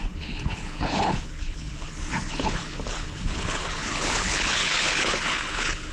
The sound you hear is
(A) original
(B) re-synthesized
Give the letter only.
B